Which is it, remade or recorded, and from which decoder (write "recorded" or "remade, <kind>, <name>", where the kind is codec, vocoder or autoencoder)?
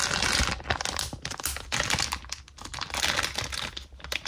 recorded